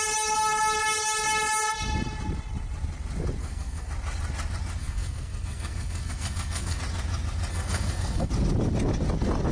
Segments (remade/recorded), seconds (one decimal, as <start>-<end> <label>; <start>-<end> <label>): 0.0-3.4 recorded; 3.4-3.9 remade; 3.9-4.8 recorded; 4.8-6.8 remade; 6.8-7.5 recorded; 7.5-8.3 remade; 8.3-9.5 recorded